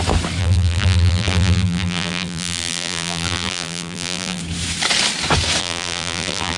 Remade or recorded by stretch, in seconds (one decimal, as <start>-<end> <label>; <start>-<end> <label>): 0.0-0.4 recorded; 0.4-4.4 remade; 4.4-5.6 recorded; 5.6-6.6 remade